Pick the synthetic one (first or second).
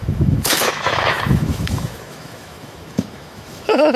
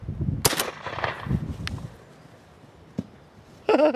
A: first